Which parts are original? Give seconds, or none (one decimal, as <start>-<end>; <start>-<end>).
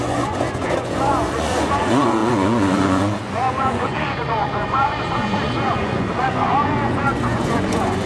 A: none